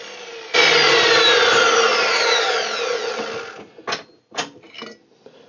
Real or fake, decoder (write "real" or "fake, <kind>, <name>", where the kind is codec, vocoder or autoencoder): real